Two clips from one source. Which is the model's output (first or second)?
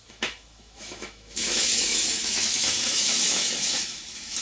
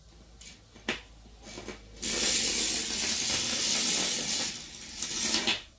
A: first